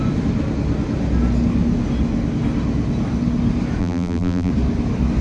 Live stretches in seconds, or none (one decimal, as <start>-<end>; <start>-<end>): 0.0-3.8; 4.5-5.2